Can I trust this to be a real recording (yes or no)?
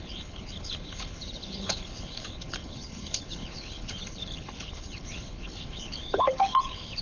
no